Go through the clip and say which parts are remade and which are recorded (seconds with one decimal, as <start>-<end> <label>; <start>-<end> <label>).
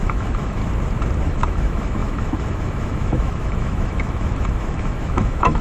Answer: 0.0-0.6 remade; 0.6-1.2 recorded; 1.2-5.6 remade